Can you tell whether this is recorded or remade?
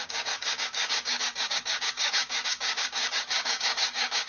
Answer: remade